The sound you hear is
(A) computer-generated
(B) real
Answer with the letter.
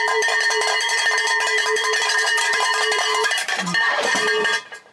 A